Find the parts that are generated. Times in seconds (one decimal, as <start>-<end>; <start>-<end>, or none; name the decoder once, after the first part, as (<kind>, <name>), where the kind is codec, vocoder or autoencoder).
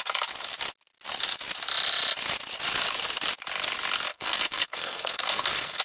4.1-5.8 (codec, SNAC)